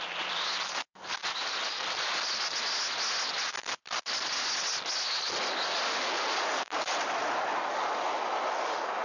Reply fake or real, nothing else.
real